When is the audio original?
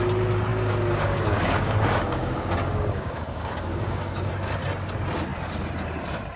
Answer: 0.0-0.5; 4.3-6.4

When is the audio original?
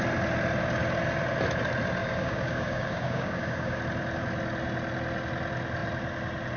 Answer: 0.0-2.0; 3.8-6.6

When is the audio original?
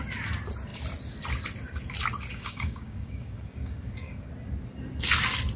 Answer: 0.0-2.3; 4.3-5.6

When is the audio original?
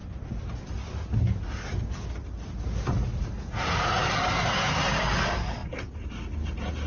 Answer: 0.0-6.9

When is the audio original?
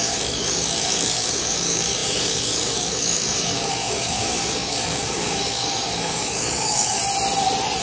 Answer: 7.0-7.8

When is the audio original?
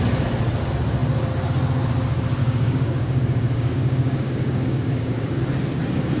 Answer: 0.0-2.4; 5.4-6.2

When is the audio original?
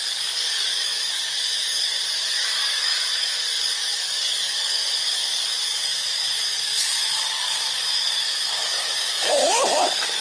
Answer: none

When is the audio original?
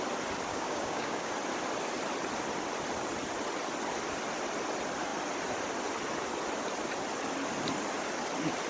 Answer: 0.0-0.5; 1.3-8.7